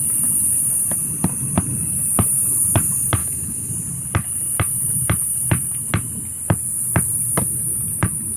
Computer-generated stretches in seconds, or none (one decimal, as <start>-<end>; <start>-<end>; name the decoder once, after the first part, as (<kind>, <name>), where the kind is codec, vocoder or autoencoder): 3.2-3.7 (autoencoder, DAC-VAE)